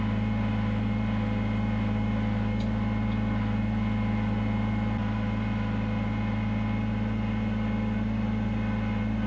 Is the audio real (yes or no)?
yes